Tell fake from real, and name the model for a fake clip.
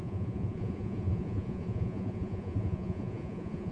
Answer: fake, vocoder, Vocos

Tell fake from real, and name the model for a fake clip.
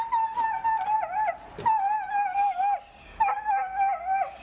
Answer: real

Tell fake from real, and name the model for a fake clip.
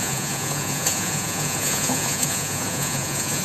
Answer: fake, vocoder, Vocos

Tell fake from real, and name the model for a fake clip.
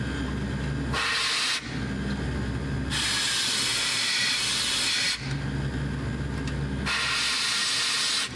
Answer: real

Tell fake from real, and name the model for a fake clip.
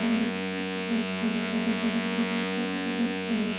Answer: fake, vocoder, Vocos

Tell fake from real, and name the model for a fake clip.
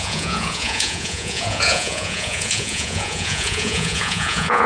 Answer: fake, vocoder, Vocos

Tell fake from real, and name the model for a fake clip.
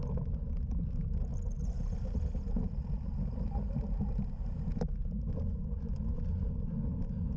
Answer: real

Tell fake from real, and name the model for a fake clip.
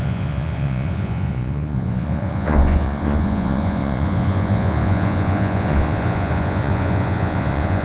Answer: fake, vocoder, Vocos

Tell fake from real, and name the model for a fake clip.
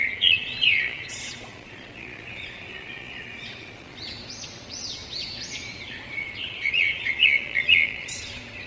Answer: fake, vocoder, Vocos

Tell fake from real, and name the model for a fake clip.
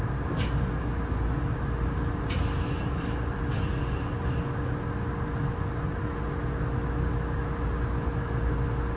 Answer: real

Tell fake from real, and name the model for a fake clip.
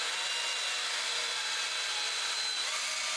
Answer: real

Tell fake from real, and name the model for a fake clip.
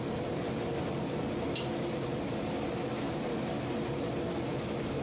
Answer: real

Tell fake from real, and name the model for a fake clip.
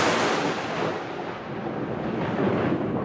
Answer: real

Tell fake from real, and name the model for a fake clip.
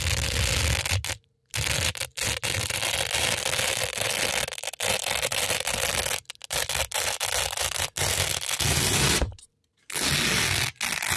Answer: real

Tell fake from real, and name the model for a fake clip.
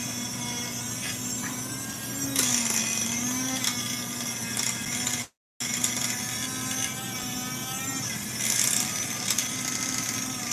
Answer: real